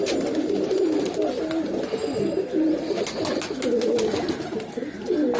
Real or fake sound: real